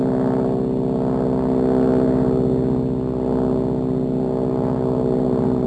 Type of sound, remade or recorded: recorded